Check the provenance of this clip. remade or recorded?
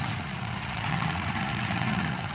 remade